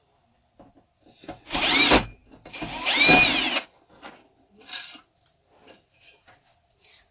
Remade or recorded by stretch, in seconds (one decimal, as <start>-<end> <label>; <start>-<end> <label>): 0.0-7.1 recorded